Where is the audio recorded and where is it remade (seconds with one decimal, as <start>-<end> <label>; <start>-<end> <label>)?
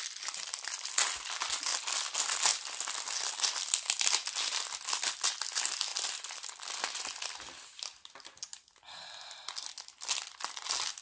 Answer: 0.0-11.0 recorded